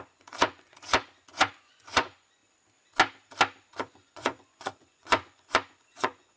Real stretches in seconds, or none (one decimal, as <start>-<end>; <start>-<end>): 2.4-3.8